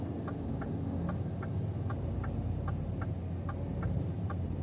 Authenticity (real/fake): real